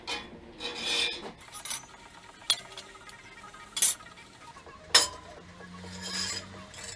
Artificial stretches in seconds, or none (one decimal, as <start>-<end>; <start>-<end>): none